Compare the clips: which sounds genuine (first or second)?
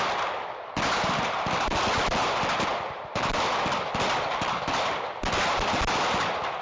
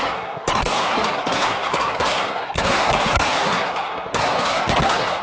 first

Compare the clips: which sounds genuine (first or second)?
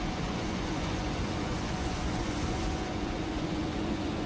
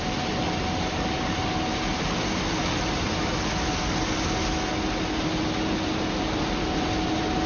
second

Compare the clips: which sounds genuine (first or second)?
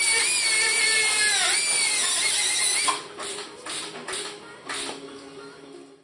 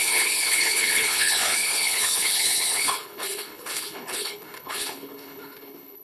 first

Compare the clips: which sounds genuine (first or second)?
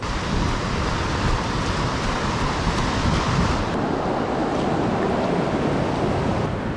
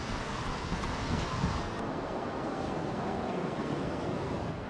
first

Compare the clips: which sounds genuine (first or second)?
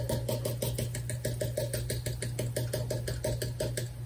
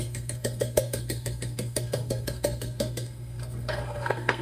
first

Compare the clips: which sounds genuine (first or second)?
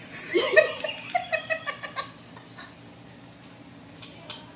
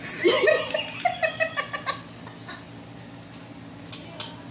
second